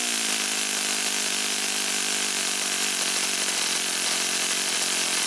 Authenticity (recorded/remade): recorded